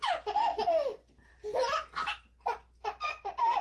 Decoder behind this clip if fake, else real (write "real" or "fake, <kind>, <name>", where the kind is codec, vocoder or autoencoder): real